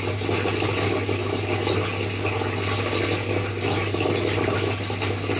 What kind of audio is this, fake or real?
real